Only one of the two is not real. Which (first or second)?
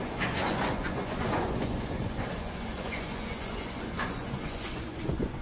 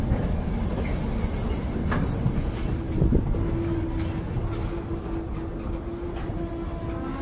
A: first